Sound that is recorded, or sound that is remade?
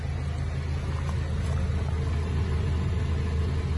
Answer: recorded